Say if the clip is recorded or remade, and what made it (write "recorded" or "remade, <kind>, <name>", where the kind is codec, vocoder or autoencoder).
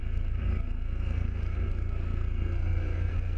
remade, codec, SNAC